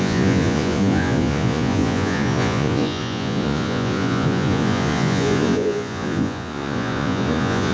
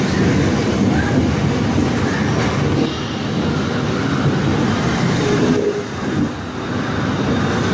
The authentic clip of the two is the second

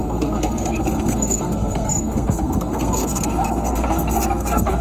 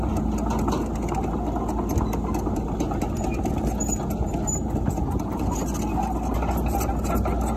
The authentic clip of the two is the second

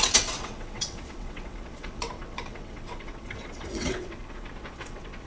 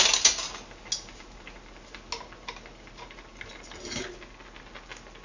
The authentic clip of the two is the second